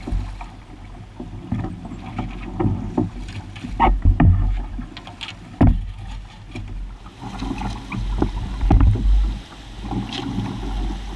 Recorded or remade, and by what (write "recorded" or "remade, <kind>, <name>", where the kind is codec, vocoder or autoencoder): recorded